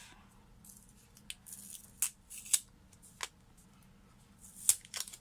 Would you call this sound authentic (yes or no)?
yes